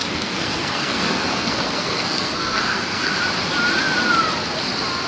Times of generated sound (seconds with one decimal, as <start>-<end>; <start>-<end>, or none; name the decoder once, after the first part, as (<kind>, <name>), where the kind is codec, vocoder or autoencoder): 0.0-3.1 (codec, SNAC)